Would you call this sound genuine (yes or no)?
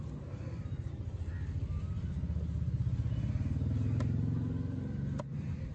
yes